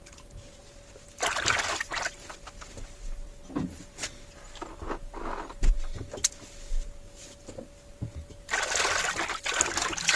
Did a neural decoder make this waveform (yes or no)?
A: no